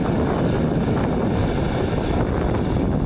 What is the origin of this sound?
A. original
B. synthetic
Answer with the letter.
A